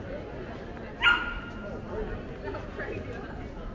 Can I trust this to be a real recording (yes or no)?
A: yes